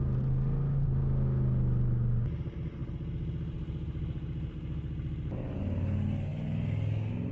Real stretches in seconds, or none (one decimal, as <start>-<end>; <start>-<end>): 0.0-7.3